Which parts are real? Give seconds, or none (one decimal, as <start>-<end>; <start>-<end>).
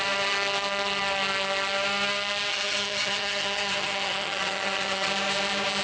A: 0.0-2.5; 5.1-5.8